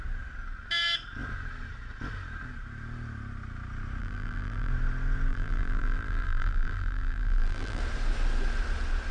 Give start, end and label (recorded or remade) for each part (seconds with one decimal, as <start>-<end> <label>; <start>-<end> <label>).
0.0-4.0 recorded; 4.0-4.7 remade; 4.7-5.3 recorded; 5.3-7.8 remade; 7.8-9.1 recorded